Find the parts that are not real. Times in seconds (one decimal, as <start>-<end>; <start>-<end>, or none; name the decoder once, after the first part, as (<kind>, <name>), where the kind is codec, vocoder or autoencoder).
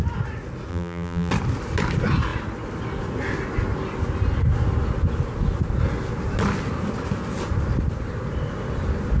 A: 0.7-1.3 (vocoder, BigVGAN v2)